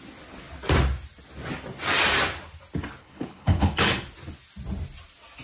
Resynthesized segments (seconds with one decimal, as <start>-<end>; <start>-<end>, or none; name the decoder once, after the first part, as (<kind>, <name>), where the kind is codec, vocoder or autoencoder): 3.0-4.0 (codec, HILCodec)